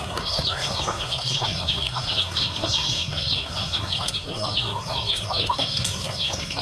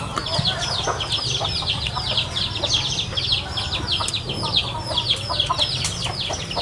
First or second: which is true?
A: second